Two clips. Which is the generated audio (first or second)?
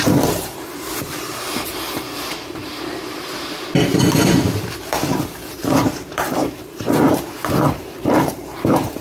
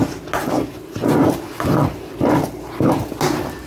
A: first